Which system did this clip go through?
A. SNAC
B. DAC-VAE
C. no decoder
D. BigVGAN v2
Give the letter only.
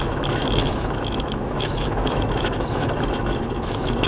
B